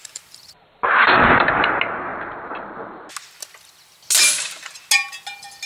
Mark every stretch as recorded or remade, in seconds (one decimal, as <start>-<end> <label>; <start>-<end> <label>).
0.0-1.5 remade; 1.5-2.1 recorded; 2.1-3.1 remade; 3.1-5.7 recorded